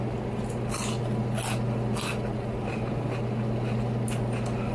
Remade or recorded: recorded